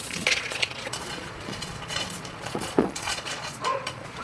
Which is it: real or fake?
fake